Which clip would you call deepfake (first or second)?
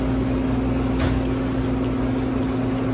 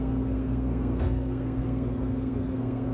second